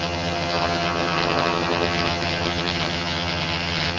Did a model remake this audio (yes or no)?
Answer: yes